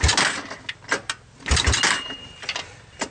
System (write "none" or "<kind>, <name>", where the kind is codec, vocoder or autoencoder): none